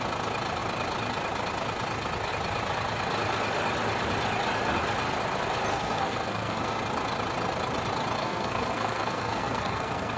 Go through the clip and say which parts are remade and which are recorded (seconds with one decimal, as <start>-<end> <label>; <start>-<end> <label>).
0.0-5.7 recorded; 5.7-6.8 remade; 6.8-8.2 recorded; 8.2-10.2 remade